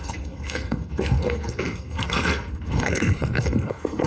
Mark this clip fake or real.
fake